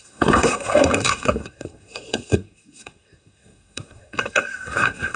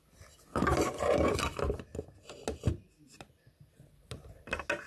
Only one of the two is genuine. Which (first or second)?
second